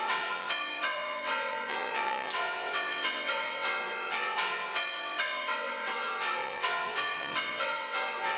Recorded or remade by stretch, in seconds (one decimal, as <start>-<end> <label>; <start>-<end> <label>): 0.0-8.4 remade